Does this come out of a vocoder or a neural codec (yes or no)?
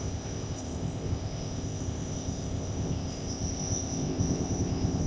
yes